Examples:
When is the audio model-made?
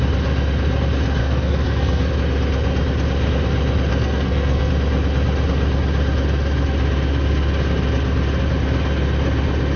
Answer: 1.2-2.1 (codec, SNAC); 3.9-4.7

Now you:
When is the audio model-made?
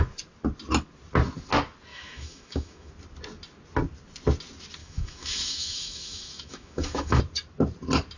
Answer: 1.9-2.9 (autoencoder, DAC-VAE); 4.8-7.2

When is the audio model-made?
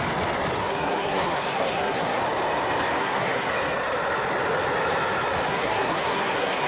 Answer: 0.6-2.2 (codec, SNAC); 3.0-3.5; 5.5-6.7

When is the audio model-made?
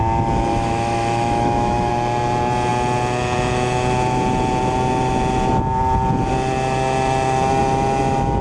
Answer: 0.5-1.9 (autoencoder, DAC-VAE)